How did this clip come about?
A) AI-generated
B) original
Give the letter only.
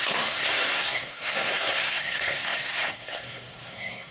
A